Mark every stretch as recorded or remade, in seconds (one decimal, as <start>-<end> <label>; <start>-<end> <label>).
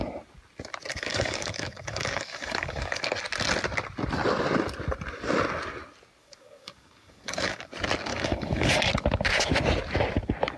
0.0-0.9 recorded; 0.9-3.0 remade; 3.0-6.2 recorded; 6.2-7.7 remade; 7.7-8.1 recorded; 8.1-8.7 remade; 8.7-10.6 recorded